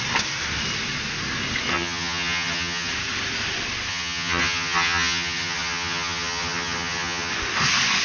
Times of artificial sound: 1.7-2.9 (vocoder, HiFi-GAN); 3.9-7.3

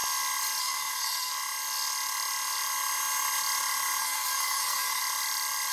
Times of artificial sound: 0.6-1.3 (codec, SNAC); 4.0-5.0

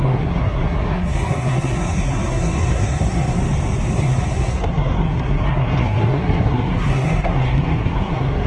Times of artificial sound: 0.0-3.4 (codec, SNAC); 3.9-8.5

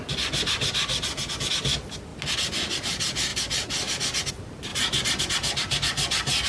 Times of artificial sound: none

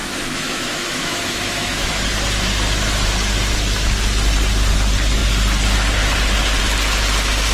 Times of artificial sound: 0.0-1.9 (autoencoder, DAC-VAE)

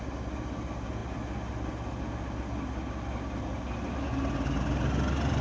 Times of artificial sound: none